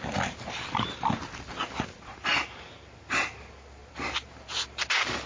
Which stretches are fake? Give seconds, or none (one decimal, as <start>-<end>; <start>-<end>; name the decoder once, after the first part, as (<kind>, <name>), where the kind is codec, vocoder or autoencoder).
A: none